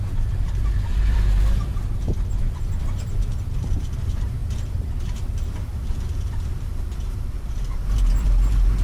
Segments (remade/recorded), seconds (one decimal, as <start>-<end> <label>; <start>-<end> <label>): 0.0-1.7 remade; 1.7-2.4 recorded; 2.4-7.8 remade; 7.8-8.8 recorded